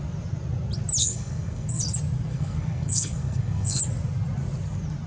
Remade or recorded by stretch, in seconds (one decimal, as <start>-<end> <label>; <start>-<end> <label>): 0.0-1.0 recorded; 1.0-1.8 remade; 1.8-2.3 recorded; 2.3-3.8 remade; 3.8-5.1 recorded